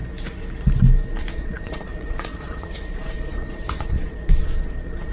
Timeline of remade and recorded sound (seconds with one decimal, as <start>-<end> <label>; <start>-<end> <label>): 0.0-1.2 recorded; 1.2-5.1 remade